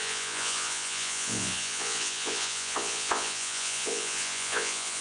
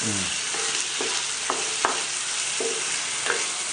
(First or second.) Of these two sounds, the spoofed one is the first